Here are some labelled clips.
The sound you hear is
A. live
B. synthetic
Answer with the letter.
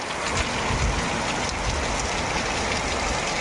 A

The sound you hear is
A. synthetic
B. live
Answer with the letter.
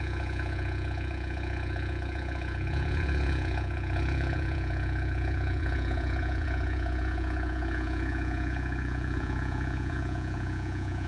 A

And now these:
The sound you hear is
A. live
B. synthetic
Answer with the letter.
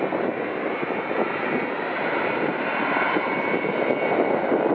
A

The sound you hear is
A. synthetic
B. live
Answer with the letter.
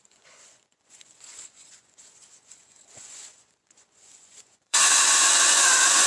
A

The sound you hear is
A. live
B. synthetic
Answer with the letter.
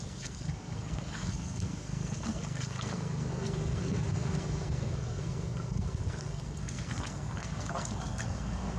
B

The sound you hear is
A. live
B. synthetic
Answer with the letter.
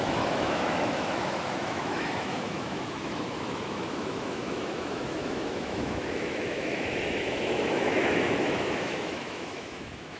B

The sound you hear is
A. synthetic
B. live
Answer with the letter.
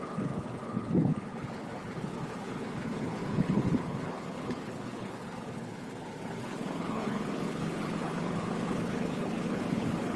A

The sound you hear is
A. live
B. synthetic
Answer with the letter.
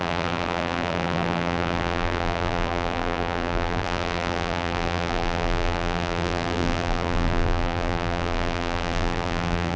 B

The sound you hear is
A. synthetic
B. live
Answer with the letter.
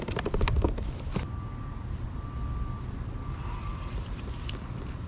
B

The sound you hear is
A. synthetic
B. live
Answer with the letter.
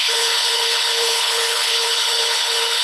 A